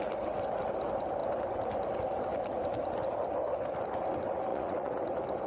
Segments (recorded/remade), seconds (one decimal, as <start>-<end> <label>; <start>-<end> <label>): 0.0-4.5 recorded; 4.5-5.0 remade; 5.0-5.5 recorded